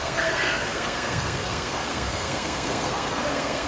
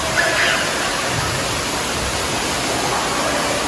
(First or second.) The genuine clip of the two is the second